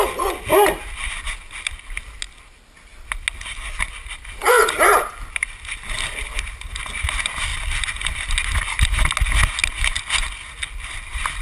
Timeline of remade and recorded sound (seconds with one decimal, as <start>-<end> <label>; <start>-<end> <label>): 0.0-4.4 recorded; 4.4-6.7 remade; 6.7-7.5 recorded; 7.5-8.3 remade; 8.3-11.4 recorded